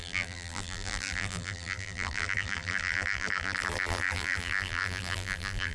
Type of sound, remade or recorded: remade